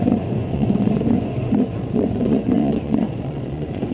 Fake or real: fake